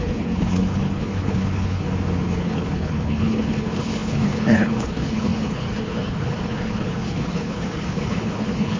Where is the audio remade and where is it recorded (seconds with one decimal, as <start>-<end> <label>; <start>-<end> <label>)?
0.0-1.8 remade; 1.8-2.3 recorded; 2.3-8.8 remade

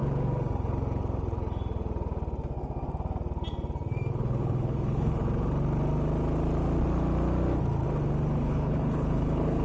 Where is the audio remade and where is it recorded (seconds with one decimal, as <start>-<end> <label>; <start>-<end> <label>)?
0.0-4.1 recorded; 4.1-5.2 remade; 5.2-8.4 recorded; 8.4-9.6 remade

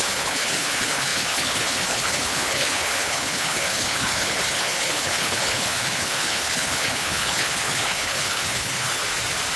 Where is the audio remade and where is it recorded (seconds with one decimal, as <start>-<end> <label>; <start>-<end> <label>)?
0.0-9.0 remade; 9.0-9.6 recorded

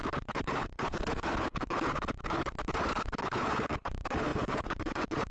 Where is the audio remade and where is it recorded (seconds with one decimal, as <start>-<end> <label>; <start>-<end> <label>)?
0.0-5.3 remade

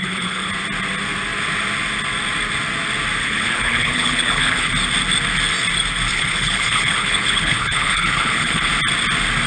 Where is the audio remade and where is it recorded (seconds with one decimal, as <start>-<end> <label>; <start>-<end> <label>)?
0.0-0.5 remade; 0.5-3.2 recorded; 3.2-4.7 remade; 4.7-6.1 recorded; 6.1-8.7 remade; 8.7-9.5 recorded

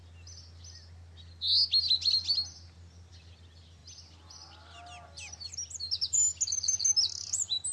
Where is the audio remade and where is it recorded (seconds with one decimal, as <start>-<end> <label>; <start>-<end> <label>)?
0.0-7.7 recorded

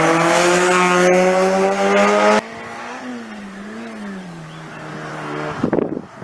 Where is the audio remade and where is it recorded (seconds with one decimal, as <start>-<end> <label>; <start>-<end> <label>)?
0.0-6.2 recorded